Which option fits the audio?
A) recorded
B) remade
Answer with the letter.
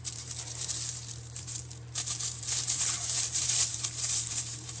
B